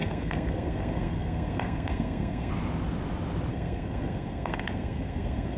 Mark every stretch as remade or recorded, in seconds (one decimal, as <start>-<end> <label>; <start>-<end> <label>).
0.0-2.5 remade; 2.5-3.5 recorded; 3.5-5.6 remade